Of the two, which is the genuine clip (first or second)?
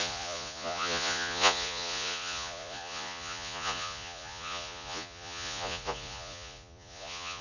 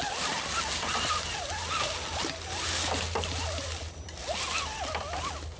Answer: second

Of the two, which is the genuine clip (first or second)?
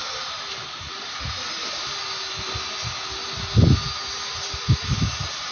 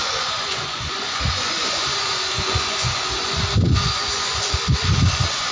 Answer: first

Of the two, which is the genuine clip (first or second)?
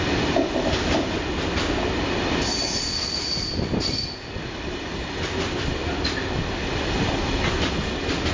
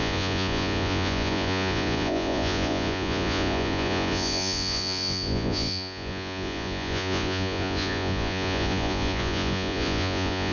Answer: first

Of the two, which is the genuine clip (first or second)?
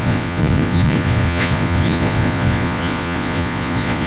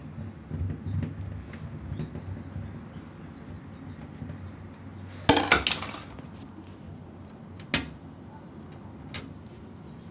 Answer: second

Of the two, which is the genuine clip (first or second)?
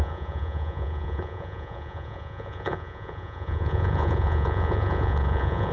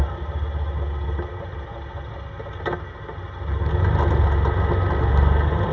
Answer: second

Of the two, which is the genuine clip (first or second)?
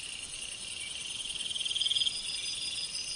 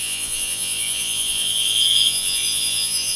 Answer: first